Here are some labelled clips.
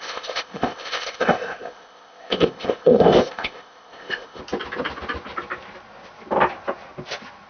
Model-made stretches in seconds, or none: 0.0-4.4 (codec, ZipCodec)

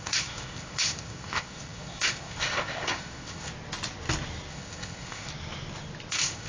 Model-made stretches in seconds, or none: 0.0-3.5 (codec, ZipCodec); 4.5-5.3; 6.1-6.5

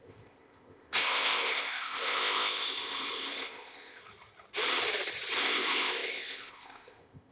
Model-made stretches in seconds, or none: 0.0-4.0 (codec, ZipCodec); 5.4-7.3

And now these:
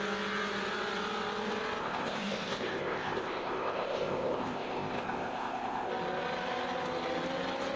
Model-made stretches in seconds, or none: 1.8-5.9 (codec, ZipCodec)

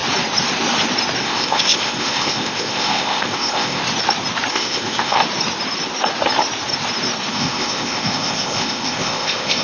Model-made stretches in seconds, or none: 1.2-3.8 (codec, ZipCodec); 4.5-5.2; 7.3-9.6

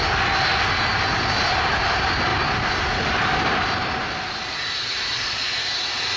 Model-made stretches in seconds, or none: none